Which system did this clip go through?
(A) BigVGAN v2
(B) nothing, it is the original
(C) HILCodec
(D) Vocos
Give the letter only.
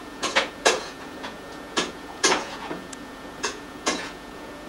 D